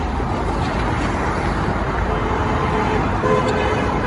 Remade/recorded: remade